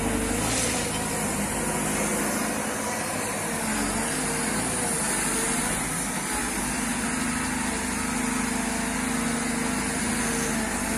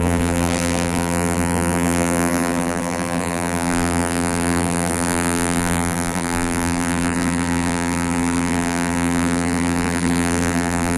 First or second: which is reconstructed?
second